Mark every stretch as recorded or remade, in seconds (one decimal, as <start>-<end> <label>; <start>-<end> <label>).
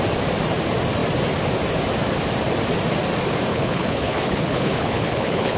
0.0-3.5 recorded; 3.5-5.6 remade